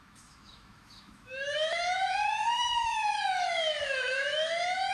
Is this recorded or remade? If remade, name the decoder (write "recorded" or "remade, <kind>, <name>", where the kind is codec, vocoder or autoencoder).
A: remade, autoencoder, DAC-VAE